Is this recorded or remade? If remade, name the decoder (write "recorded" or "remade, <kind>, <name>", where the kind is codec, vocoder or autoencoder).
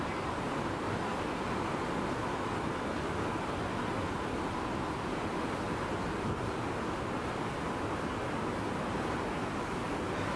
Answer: recorded